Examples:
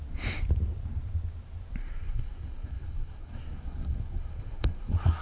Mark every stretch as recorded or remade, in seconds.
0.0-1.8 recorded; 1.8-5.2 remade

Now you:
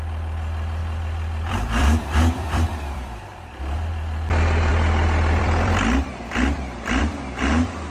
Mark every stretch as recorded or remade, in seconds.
0.0-0.8 recorded; 0.8-3.5 remade; 3.5-4.7 recorded; 4.7-7.0 remade; 7.0-7.9 recorded

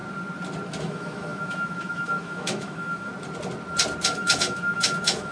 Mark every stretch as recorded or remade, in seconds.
0.0-0.8 recorded; 0.8-3.1 remade; 3.1-4.1 recorded; 4.1-5.3 remade

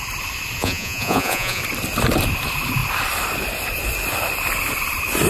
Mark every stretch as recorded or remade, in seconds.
0.0-0.6 recorded; 0.6-1.6 remade; 1.6-5.3 recorded

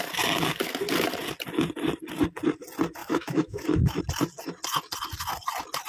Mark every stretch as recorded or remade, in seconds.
0.0-3.0 recorded; 3.0-4.0 remade; 4.0-5.9 recorded

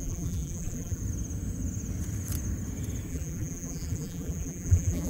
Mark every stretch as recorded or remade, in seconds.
0.0-1.0 remade; 1.0-3.1 recorded; 3.1-5.1 remade

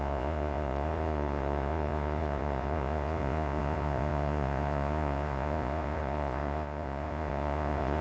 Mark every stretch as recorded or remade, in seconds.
0.0-8.0 remade